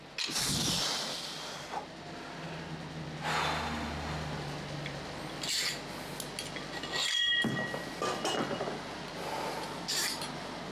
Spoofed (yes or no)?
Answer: no